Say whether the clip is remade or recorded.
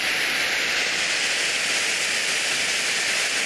recorded